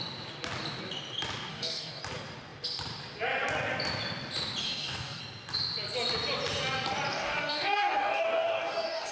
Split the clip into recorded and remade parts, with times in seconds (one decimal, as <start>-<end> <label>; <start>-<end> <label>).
0.0-1.5 recorded; 1.5-2.0 remade; 2.0-4.6 recorded; 4.6-5.2 remade; 5.2-7.1 recorded; 7.1-9.1 remade